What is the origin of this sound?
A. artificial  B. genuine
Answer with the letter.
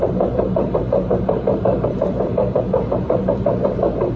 A